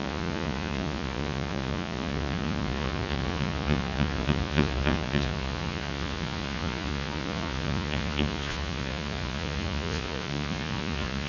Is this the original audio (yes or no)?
no